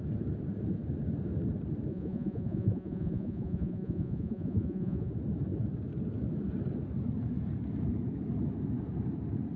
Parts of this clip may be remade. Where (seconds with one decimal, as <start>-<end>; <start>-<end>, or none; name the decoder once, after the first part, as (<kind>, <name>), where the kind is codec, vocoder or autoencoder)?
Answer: 1.9-5.1 (vocoder, Vocos)